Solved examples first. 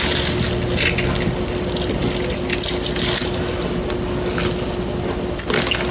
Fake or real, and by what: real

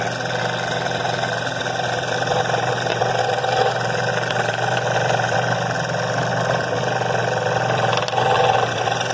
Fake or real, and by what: real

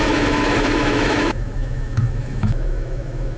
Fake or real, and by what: fake, autoencoder, DAC-VAE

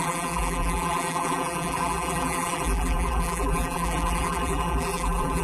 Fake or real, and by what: fake, vocoder, BigVGAN v2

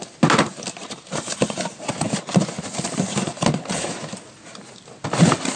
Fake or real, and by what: real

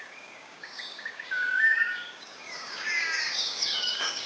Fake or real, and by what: fake, codec, DAC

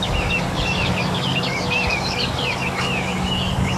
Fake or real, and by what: fake, codec, DAC